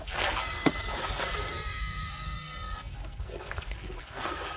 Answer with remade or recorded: remade